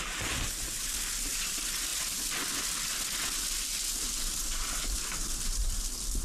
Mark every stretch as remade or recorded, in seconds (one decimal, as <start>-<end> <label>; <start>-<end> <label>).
0.0-6.2 recorded